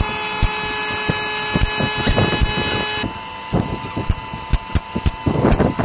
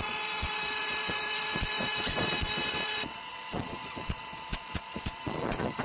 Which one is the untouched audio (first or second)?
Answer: first